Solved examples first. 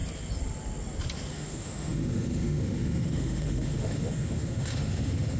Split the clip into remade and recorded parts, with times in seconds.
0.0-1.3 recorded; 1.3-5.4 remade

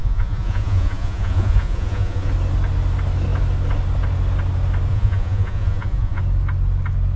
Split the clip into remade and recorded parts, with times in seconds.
0.0-2.3 remade; 2.3-4.9 recorded; 4.9-6.2 remade; 6.2-7.2 recorded

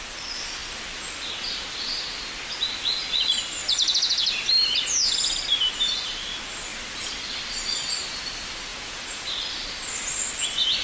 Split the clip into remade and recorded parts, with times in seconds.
0.0-8.7 recorded; 8.7-9.3 remade; 9.3-10.8 recorded

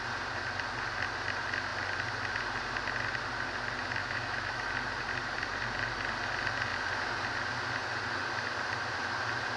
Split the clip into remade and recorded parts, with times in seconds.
0.0-4.0 recorded; 4.0-4.7 remade; 4.7-9.6 recorded

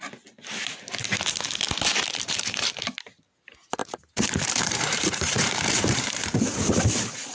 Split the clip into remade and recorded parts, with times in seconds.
0.0-1.9 recorded; 1.9-2.9 remade; 2.9-3.8 recorded; 3.8-6.3 remade; 6.3-7.3 recorded

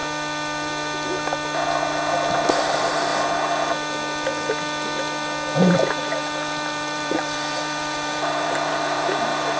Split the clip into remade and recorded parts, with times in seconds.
0.0-2.6 recorded; 2.6-3.1 remade; 3.1-6.0 recorded; 6.0-9.6 remade

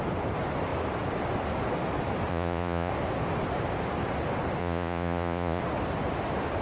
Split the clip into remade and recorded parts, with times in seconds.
0.0-2.3 recorded; 2.3-2.9 remade; 2.9-4.6 recorded; 4.6-5.6 remade; 5.6-6.6 recorded

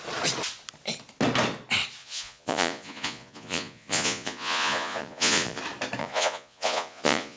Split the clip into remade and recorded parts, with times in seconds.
0.0-2.0 recorded; 2.0-5.6 remade; 5.6-6.0 recorded; 6.0-7.4 remade